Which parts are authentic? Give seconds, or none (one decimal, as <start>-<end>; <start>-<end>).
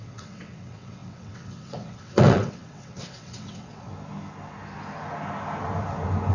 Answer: 3.9-6.3